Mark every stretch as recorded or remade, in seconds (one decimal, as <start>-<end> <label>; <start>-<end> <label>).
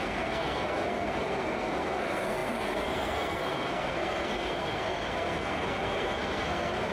0.0-6.9 remade